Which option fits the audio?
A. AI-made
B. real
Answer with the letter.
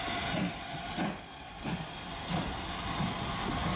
B